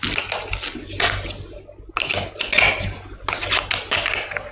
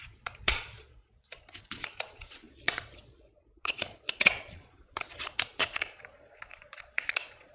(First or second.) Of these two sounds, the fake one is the second